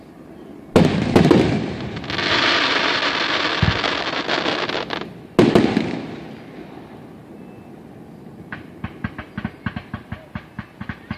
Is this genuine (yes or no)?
yes